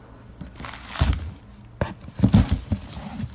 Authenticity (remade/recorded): recorded